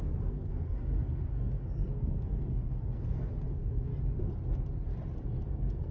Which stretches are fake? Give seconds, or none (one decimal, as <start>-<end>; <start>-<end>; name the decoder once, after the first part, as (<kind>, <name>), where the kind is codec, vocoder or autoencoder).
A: 0.0-3.9 (codec, SNAC); 5.5-5.9